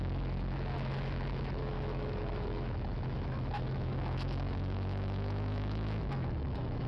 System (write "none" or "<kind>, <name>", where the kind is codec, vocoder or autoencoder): autoencoder, DAC-VAE